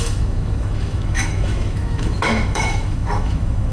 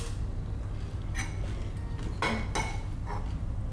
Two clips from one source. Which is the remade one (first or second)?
first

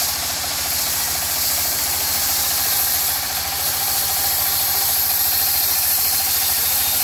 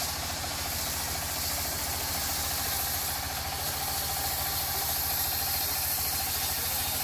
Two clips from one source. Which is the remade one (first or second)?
first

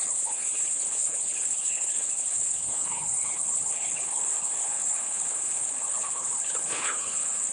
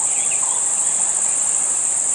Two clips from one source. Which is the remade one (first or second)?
first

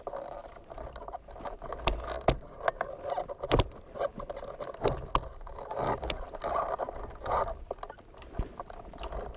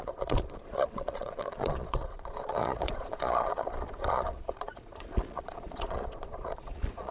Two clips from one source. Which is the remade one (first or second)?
second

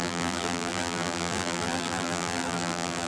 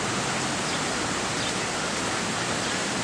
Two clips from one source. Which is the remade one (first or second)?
first